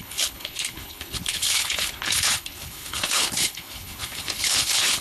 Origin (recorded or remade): remade